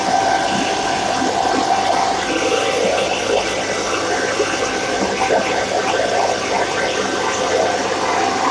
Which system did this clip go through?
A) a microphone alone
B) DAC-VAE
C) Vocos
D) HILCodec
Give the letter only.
A